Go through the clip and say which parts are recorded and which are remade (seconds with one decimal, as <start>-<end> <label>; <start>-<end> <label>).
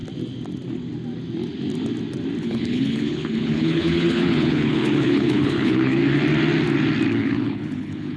0.0-2.4 recorded; 2.4-6.0 remade; 6.0-7.1 recorded; 7.1-8.2 remade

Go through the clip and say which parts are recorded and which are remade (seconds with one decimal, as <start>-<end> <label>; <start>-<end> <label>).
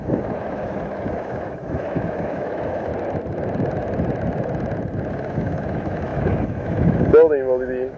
0.0-2.9 remade; 2.9-5.1 recorded; 5.1-8.0 remade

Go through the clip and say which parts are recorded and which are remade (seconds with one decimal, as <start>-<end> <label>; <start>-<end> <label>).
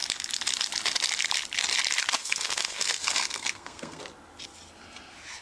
0.0-2.2 recorded; 2.2-4.0 remade; 4.0-5.4 recorded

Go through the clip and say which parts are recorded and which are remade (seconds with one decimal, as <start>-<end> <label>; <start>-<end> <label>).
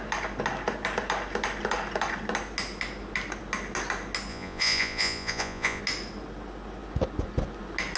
0.0-4.3 recorded; 4.3-5.8 remade; 5.8-8.0 recorded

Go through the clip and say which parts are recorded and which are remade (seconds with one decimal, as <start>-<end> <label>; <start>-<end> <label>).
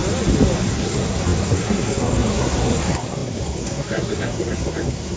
0.0-0.7 recorded; 0.7-5.2 remade